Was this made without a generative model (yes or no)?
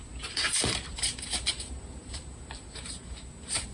no